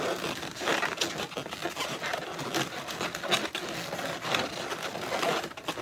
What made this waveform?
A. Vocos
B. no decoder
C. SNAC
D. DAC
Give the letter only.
B